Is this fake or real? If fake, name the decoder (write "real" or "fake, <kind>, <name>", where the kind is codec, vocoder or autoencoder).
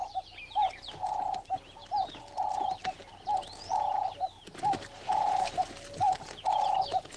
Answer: real